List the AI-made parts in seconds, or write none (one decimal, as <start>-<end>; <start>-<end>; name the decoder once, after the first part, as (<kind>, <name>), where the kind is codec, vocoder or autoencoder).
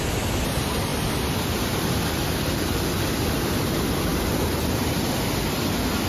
none